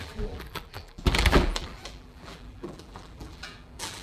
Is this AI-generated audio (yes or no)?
yes